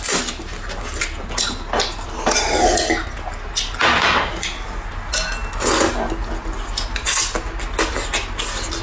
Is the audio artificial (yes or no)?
no